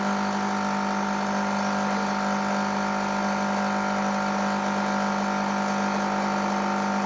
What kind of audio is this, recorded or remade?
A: recorded